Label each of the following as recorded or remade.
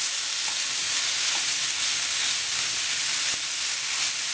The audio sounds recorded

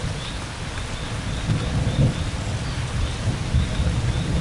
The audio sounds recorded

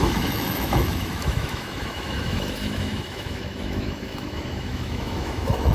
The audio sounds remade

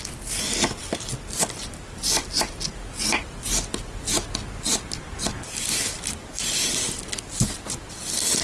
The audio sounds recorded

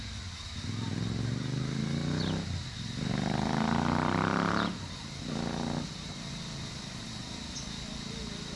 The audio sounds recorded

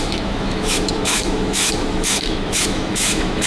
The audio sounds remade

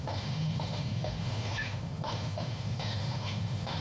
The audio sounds remade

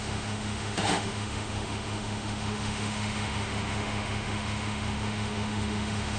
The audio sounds remade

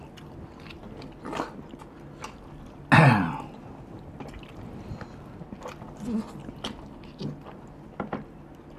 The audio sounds recorded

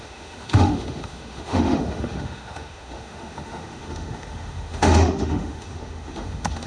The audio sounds remade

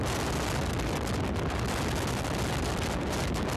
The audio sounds recorded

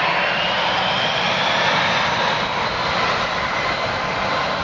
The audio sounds recorded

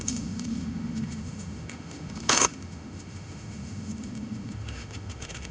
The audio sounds remade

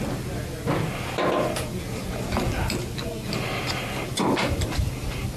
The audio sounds recorded